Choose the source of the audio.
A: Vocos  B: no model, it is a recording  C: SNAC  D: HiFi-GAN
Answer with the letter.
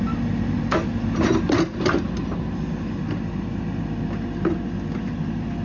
B